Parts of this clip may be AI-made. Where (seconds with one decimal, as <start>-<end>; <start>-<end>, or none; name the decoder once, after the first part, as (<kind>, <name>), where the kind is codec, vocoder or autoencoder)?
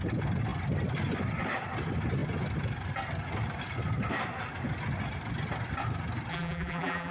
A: 6.3-7.1 (vocoder, BigVGAN v2)